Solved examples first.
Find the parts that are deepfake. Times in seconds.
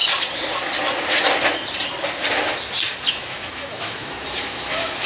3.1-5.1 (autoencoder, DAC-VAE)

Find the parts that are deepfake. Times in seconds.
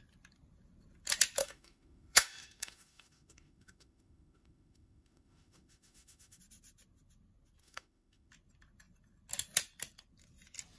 1.4-6.4 (autoencoder, DAC-VAE); 7.6-8.3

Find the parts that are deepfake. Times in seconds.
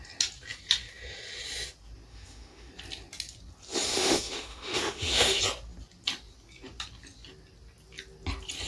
2.1-2.7 (autoencoder, DAC-VAE); 3.9-5.4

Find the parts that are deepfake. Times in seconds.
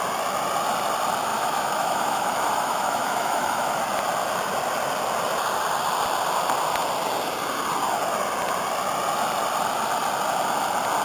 1.3-3.8 (autoencoder, DAC-VAE)